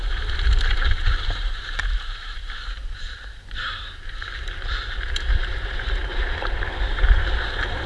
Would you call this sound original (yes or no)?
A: no